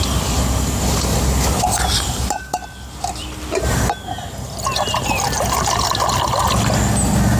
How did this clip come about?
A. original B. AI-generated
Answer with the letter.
A